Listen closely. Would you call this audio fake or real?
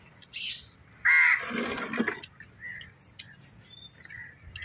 real